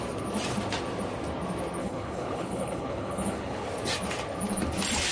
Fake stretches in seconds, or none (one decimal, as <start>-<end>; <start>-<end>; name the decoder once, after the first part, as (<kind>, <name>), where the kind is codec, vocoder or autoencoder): 1.8-3.7 (codec, HILCodec)